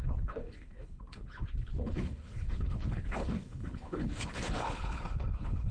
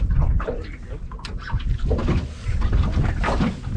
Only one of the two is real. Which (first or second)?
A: second